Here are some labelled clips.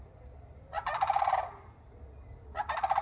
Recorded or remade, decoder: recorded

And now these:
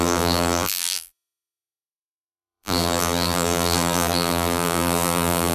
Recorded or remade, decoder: remade, vocoder, BigVGAN v2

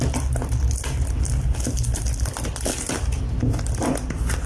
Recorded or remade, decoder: recorded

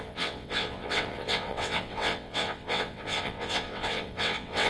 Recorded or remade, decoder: remade, vocoder, WaveNeXt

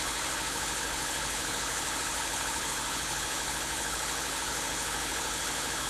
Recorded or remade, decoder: remade, codec, HILCodec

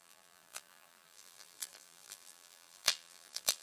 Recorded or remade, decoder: remade, vocoder, BigVGAN v2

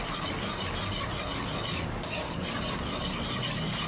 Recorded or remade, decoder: recorded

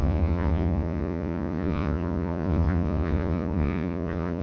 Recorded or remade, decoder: remade, vocoder, Vocos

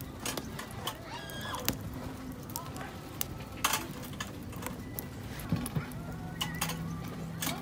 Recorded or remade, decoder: recorded